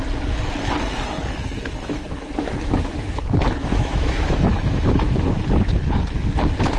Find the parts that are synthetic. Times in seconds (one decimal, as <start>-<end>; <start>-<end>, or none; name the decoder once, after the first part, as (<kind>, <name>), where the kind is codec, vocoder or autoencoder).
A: 1.6-5.4 (autoencoder, DAC-VAE)